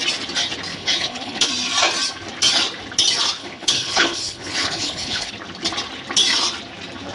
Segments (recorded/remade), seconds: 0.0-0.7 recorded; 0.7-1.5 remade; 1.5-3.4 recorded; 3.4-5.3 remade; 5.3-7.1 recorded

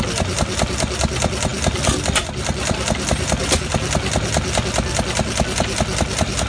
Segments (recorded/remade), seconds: 0.0-6.5 recorded

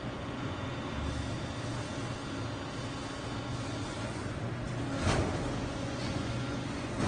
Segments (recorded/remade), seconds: 0.0-0.7 remade; 0.7-3.8 recorded; 3.8-4.2 remade; 4.2-5.5 recorded; 5.5-7.1 remade